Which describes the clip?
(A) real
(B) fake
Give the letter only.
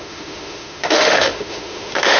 B